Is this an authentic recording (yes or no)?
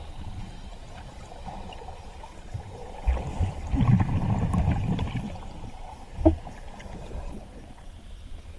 yes